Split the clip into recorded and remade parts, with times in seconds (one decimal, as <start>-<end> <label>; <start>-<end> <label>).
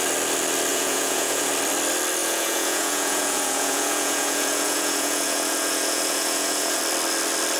0.0-0.7 recorded; 0.7-1.5 remade; 1.5-2.2 recorded; 2.2-6.8 remade; 6.8-7.6 recorded